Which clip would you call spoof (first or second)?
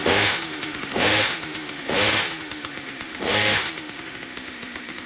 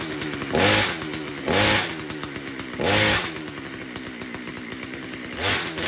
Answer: first